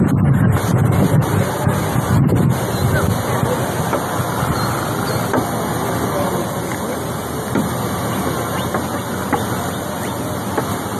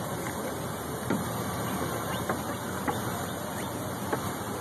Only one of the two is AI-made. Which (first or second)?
second